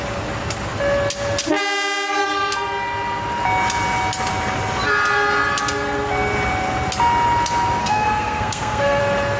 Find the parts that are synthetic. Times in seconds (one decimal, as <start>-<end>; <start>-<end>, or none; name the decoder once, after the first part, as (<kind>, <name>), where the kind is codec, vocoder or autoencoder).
7.8-9.0 (codec, SNAC)